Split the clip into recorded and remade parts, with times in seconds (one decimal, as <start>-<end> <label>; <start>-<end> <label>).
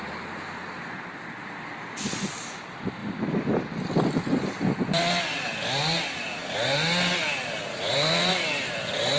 0.0-3.0 remade; 3.0-4.4 recorded; 4.4-6.4 remade; 6.4-7.9 recorded; 7.9-9.2 remade